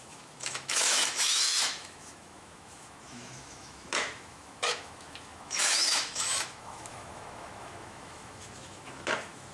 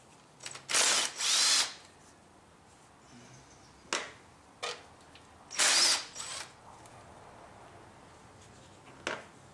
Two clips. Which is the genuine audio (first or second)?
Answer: second